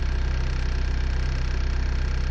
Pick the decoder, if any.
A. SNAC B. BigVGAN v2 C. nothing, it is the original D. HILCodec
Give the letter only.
C